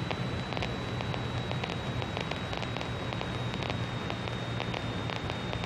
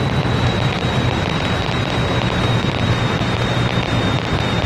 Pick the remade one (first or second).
second